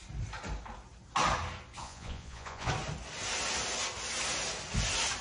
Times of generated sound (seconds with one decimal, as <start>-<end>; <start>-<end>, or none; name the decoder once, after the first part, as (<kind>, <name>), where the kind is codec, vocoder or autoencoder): 1.8-2.7 (vocoder, Vocos)